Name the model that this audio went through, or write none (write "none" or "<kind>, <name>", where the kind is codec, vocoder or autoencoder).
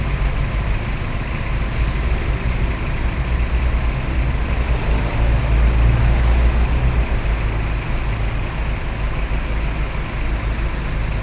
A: none